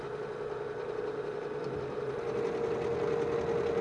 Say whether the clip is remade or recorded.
recorded